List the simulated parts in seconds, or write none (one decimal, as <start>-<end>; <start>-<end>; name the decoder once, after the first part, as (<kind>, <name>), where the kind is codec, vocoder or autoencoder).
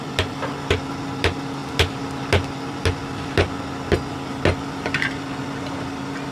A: none